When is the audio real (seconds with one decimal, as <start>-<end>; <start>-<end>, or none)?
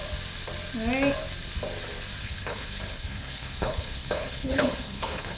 0.0-2.2